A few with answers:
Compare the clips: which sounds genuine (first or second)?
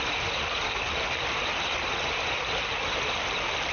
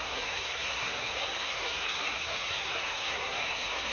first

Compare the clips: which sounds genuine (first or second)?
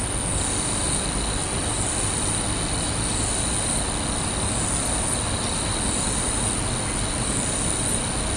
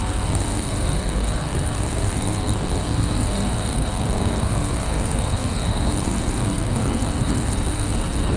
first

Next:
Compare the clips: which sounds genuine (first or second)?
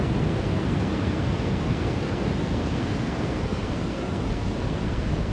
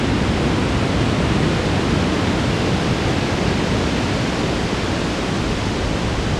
second